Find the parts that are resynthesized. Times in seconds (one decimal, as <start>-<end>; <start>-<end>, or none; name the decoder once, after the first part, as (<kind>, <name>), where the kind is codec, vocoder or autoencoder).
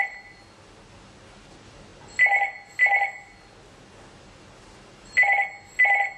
none